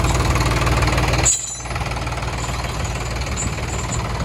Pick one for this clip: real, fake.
real